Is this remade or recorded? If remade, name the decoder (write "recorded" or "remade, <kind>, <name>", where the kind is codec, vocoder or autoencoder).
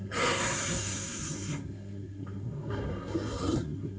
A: remade, codec, SNAC